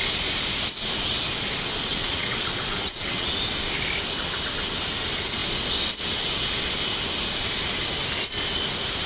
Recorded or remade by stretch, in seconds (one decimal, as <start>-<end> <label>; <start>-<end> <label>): 0.0-1.9 recorded; 1.9-3.3 remade; 3.3-9.1 recorded